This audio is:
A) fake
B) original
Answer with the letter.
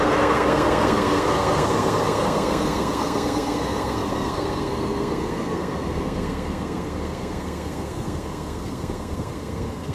A